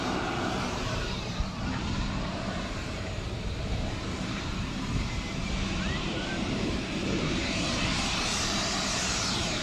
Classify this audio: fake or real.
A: fake